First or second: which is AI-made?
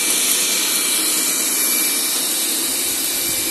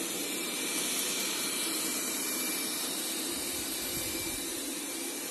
second